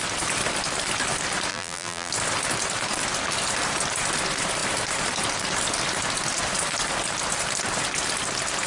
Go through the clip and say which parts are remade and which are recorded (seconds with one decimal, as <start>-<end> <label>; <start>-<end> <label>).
0.0-1.5 recorded; 1.5-2.1 remade; 2.1-8.7 recorded